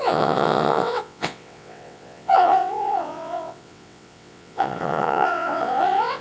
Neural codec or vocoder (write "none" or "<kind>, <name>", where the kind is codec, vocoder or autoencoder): vocoder, WaveNeXt